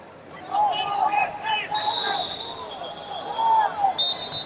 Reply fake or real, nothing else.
real